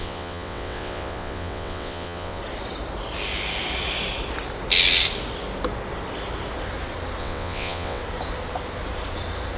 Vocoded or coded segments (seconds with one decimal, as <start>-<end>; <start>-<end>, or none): 0.0-2.4; 7.2-8.0